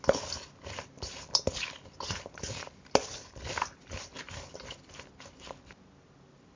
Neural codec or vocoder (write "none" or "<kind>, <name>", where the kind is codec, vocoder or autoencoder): none